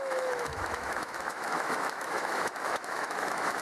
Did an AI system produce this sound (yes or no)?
yes